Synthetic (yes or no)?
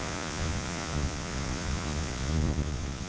yes